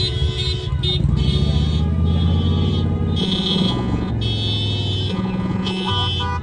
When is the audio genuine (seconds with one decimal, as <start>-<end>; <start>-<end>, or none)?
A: 0.0-3.2; 4.1-5.1; 5.9-6.4